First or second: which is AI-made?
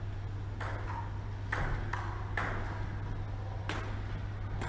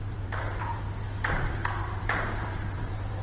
second